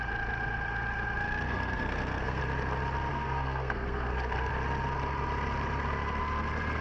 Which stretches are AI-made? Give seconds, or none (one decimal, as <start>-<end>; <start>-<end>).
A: 1.5-2.4; 3.1-4.5